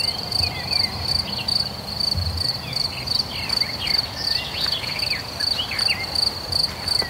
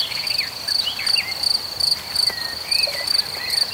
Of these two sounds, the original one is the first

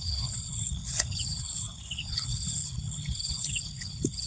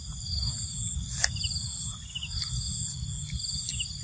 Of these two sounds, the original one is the second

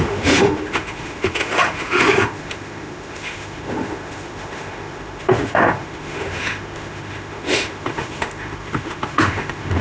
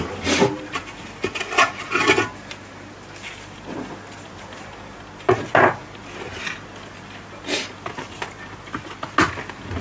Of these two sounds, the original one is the second